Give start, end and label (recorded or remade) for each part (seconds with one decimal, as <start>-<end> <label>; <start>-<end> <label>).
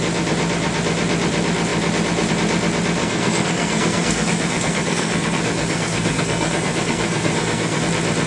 0.0-3.0 recorded; 3.0-7.8 remade; 7.8-8.3 recorded